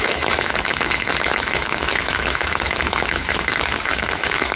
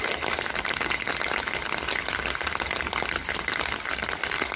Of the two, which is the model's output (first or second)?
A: first